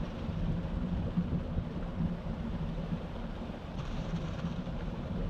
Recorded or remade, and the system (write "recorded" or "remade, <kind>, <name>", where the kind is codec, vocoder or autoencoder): remade, vocoder, BigVGAN v2